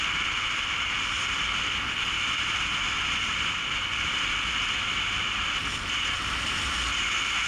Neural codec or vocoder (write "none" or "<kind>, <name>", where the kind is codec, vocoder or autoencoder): none